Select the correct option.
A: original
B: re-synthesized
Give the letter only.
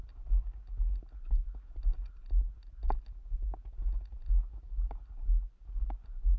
A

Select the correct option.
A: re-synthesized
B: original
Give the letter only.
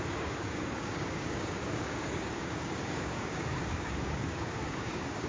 A